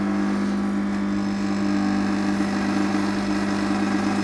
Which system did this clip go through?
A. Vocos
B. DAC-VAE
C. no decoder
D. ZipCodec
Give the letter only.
C